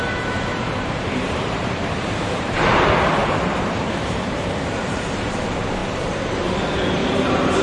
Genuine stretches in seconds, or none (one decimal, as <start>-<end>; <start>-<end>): 0.0-0.5; 2.8-3.2; 5.3-5.8; 6.6-7.0